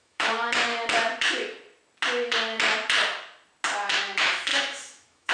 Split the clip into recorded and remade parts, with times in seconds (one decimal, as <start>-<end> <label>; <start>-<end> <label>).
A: 0.0-0.7 remade; 0.7-3.9 recorded; 3.9-5.3 remade